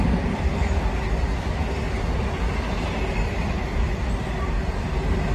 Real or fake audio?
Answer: real